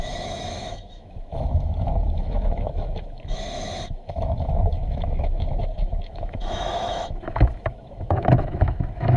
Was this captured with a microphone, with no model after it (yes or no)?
no